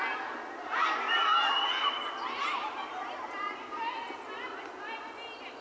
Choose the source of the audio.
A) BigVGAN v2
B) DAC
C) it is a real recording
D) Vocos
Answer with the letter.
C